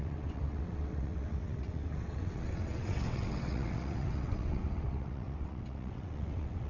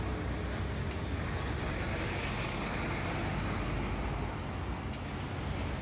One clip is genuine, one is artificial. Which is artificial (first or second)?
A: first